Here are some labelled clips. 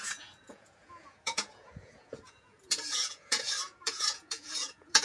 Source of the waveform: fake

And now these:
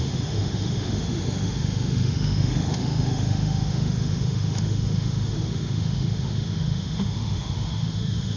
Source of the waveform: fake